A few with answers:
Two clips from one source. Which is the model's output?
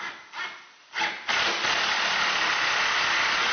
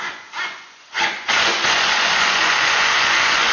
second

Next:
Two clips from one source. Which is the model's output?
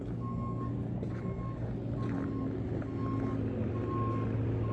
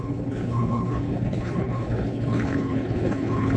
second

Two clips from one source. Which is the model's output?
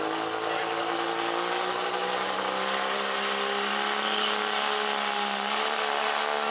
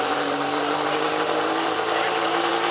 second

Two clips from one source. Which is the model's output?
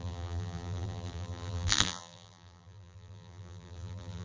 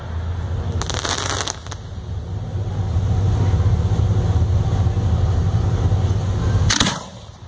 first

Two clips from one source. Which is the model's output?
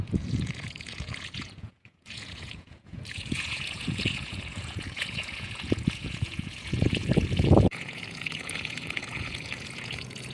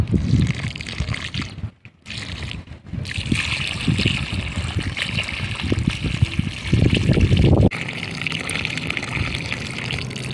first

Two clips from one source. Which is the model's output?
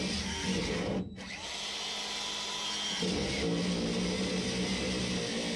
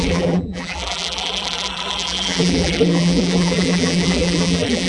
second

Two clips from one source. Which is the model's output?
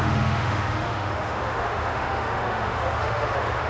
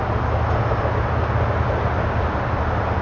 first